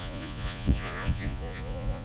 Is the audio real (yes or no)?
no